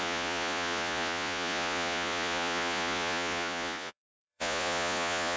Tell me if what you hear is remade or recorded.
remade